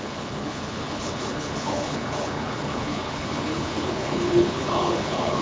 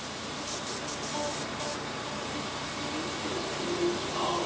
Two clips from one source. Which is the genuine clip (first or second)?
second